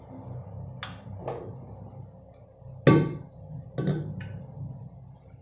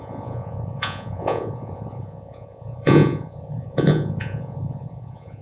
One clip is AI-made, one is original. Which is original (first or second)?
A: first